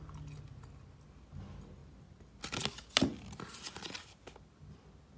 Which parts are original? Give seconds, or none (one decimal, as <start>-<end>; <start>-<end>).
0.0-1.8; 2.4-3.1; 3.9-5.2